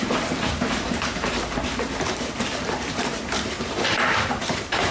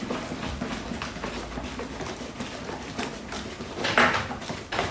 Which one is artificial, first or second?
first